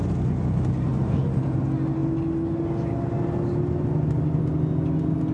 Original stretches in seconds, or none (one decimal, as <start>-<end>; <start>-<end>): 0.0-0.9; 1.6-5.3